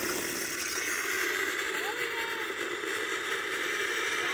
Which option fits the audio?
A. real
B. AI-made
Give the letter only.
A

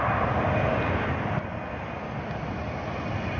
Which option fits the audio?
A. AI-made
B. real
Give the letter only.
B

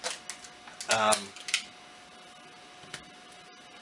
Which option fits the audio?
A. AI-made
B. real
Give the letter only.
B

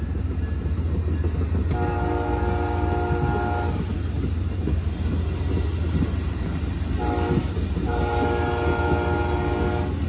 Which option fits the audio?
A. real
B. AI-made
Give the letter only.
A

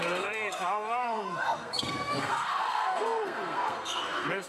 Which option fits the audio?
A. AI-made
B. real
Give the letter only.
A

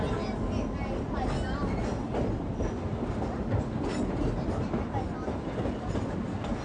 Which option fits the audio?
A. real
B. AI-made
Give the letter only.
A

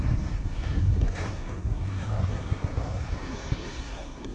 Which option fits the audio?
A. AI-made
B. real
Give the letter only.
A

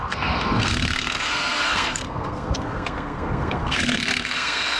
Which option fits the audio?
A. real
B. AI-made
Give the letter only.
B